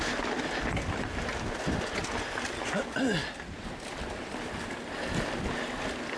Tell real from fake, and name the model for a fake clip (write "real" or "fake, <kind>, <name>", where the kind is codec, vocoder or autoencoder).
real